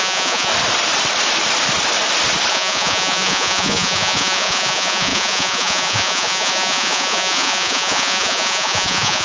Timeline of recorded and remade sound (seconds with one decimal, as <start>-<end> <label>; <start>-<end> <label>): 0.0-0.5 remade; 0.5-2.5 recorded; 2.5-9.2 remade

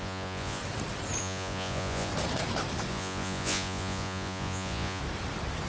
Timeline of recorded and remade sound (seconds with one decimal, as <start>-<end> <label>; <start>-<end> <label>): 0.0-0.6 remade; 0.6-1.2 recorded; 1.2-2.1 remade; 2.1-2.9 recorded; 2.9-5.0 remade; 5.0-5.7 recorded

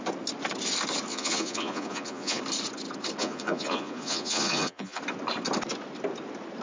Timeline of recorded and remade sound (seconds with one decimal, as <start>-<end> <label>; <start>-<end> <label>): 0.0-1.1 recorded; 1.1-2.4 remade; 2.4-3.2 recorded; 3.2-5.0 remade; 5.0-6.6 recorded

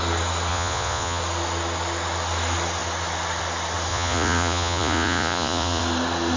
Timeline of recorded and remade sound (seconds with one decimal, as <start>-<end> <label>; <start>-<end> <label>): 0.0-0.5 recorded; 0.5-1.2 remade; 1.2-3.9 recorded; 3.9-5.8 remade; 5.8-6.4 recorded

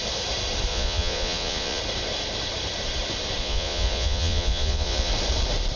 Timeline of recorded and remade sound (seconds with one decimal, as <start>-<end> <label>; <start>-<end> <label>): 0.0-0.7 recorded; 0.7-1.8 remade; 1.8-3.4 recorded; 3.4-5.1 remade; 5.1-5.8 recorded

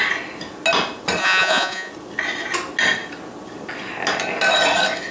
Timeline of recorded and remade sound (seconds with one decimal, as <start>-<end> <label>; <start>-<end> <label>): 0.0-1.2 recorded; 1.2-1.9 remade; 1.9-5.1 recorded

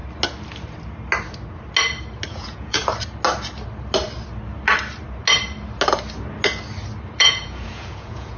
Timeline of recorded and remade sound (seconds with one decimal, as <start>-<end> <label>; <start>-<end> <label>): 0.0-2.3 recorded; 2.3-2.8 remade; 2.8-7.2 recorded; 7.2-8.4 remade

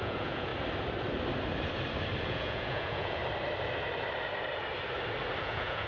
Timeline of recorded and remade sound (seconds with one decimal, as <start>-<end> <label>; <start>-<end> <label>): 0.0-0.5 remade; 0.5-2.2 recorded; 2.2-3.2 remade; 3.2-5.4 recorded; 5.4-5.9 remade